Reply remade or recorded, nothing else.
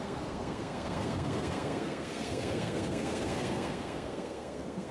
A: remade